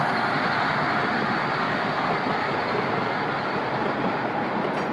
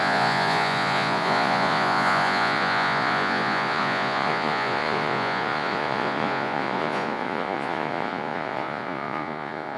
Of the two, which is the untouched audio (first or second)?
first